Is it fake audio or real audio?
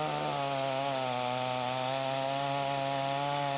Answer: real